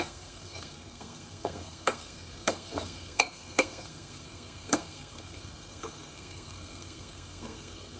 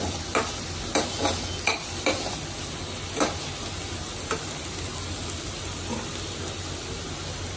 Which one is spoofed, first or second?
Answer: first